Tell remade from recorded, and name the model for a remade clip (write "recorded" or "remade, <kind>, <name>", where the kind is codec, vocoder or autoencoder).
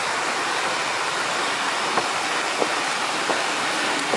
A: recorded